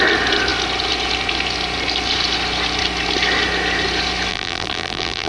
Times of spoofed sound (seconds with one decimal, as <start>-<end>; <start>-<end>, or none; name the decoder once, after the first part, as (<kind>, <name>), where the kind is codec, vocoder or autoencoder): 4.3-5.3 (vocoder, BigVGAN v2)